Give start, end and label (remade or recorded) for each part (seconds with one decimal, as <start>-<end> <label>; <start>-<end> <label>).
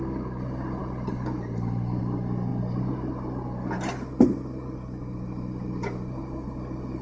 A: 0.0-7.0 recorded